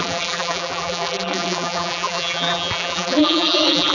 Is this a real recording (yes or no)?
no